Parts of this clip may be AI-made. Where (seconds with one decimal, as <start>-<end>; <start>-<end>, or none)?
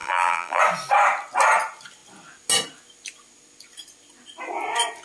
0.0-0.6